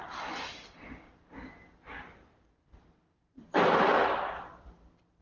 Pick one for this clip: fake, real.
fake